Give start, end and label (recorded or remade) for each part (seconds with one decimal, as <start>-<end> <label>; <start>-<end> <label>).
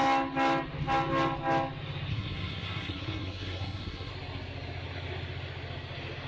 0.0-2.1 recorded; 2.1-4.1 remade; 4.1-6.3 recorded